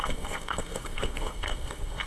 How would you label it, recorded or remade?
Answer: remade